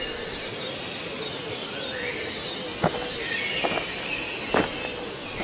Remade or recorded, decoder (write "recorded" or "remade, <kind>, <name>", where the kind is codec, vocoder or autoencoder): recorded